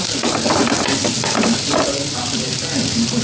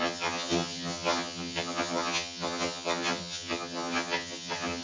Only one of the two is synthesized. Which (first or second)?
second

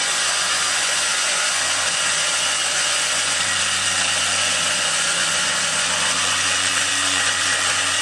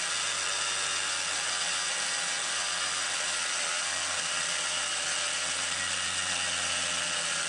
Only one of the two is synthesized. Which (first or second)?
first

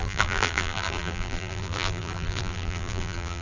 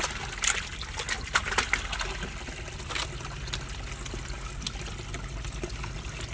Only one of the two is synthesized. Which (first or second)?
first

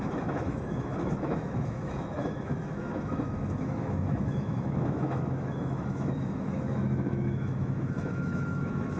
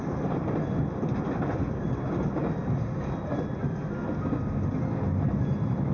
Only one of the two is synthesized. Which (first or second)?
first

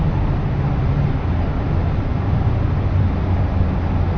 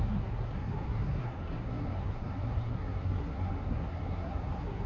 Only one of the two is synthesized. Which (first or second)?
second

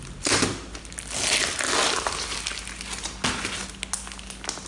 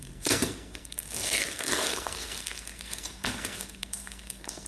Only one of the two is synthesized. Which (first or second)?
second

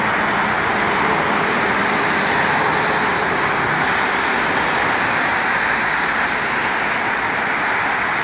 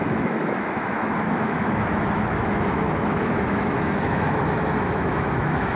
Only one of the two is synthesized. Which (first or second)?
second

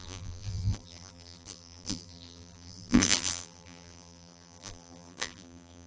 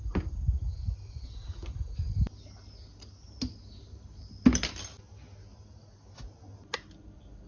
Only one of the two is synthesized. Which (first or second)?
first